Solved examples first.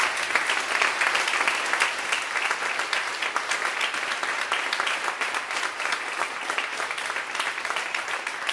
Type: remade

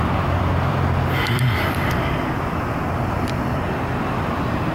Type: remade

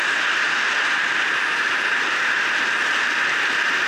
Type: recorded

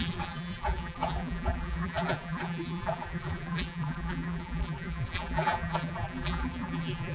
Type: remade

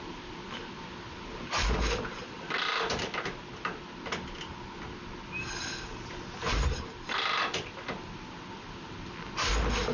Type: recorded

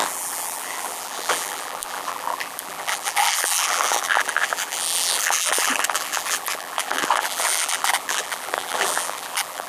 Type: remade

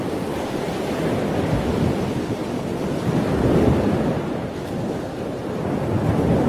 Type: recorded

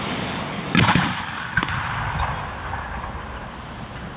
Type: recorded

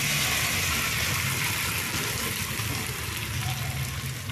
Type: recorded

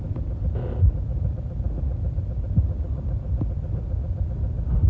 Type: recorded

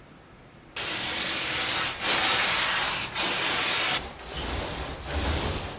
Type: remade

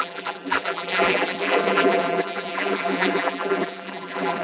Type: remade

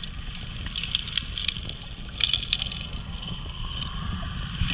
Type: recorded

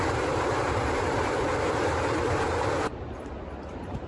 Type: remade